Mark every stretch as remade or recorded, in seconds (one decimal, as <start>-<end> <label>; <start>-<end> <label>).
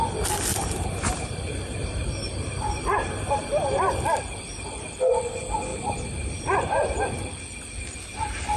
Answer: 0.0-0.5 recorded; 0.5-3.9 remade; 3.9-5.7 recorded; 5.7-7.1 remade; 7.1-8.6 recorded